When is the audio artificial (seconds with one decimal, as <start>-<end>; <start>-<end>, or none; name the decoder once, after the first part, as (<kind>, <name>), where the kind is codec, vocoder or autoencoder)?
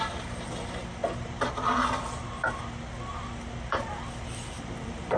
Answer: none